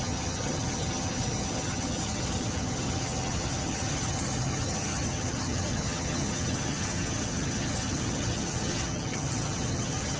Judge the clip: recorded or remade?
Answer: remade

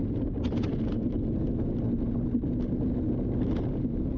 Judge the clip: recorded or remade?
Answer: recorded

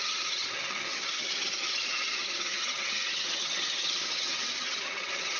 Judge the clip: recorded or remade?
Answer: remade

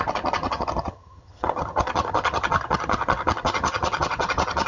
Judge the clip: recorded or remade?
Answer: remade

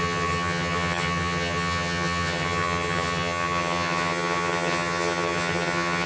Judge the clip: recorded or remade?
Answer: remade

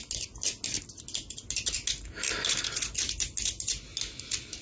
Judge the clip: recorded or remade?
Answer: recorded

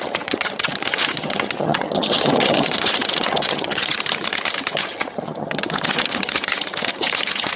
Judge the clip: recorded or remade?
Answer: remade